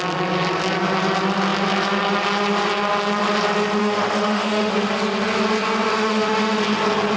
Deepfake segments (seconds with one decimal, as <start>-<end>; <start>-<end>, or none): 3.8-4.7; 5.9-6.6